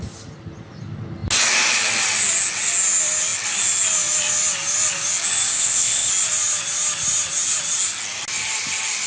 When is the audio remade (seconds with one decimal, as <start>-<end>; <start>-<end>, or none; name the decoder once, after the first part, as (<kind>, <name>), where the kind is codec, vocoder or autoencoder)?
5.5-6.1 (codec, ZipCodec)